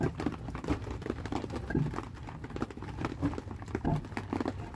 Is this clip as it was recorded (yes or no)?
yes